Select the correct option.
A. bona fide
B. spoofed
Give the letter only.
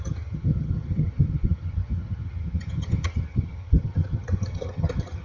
B